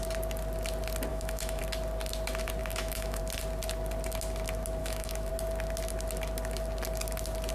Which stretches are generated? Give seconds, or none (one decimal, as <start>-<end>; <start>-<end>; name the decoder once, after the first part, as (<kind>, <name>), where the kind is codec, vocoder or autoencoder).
1.1-1.6 (autoencoder, DAC-VAE); 2.6-3.2; 4.8-5.3